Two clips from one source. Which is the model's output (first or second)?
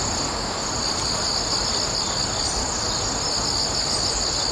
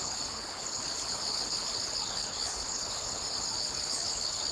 second